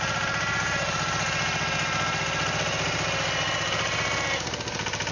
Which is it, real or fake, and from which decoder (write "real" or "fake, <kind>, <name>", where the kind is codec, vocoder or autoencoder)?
real